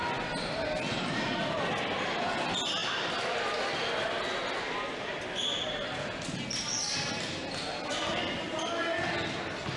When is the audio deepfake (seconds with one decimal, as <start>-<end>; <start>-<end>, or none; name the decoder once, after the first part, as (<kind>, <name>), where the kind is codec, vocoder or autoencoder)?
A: none